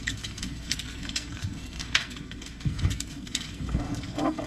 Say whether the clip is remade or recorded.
remade